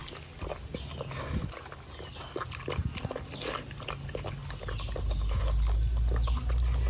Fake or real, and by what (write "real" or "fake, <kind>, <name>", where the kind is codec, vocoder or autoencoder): real